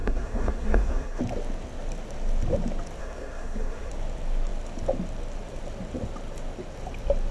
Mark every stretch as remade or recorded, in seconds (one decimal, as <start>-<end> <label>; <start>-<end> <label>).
0.0-1.2 remade; 1.2-3.0 recorded; 3.0-3.9 remade; 3.9-7.3 recorded